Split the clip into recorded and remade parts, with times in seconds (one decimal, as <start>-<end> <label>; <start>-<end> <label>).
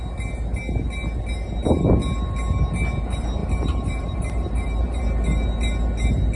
0.0-3.4 recorded; 3.4-5.0 remade; 5.0-6.4 recorded